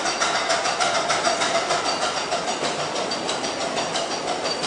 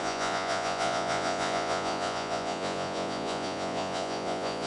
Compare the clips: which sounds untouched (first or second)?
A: first